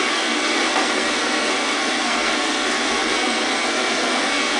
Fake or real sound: fake